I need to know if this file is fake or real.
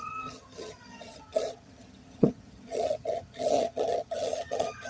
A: fake